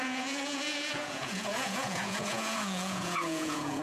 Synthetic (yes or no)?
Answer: yes